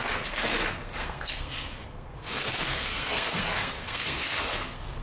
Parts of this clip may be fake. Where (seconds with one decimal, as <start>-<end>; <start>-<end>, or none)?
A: 0.0-5.0